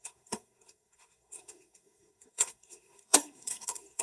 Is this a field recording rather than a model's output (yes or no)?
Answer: no